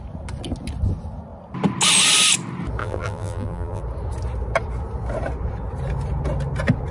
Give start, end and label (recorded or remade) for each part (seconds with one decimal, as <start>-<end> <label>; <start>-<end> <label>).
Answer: 0.0-2.8 recorded; 2.8-3.8 remade; 3.8-6.9 recorded